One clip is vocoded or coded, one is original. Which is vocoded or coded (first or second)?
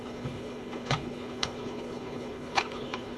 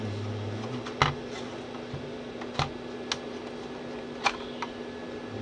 first